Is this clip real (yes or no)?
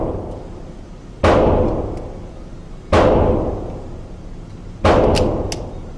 yes